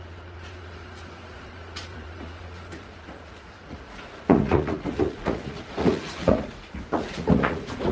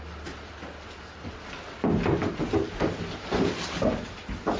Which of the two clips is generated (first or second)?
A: first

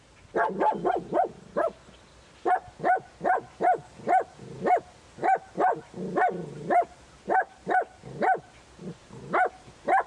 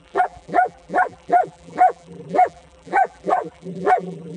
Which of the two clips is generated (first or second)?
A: second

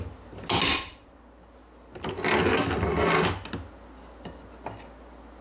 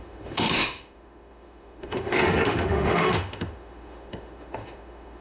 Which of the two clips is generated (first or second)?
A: second